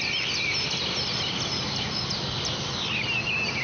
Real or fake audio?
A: real